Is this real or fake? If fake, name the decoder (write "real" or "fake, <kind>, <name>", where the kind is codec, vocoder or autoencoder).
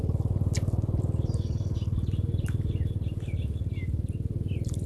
real